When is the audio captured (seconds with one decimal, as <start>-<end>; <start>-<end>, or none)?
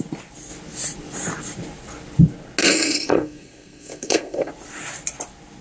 0.0-2.6; 4.5-5.6